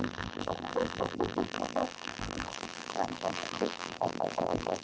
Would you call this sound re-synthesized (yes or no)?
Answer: yes